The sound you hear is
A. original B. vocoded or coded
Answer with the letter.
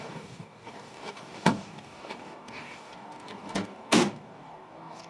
B